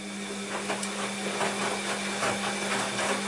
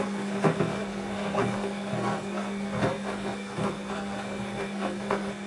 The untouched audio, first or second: first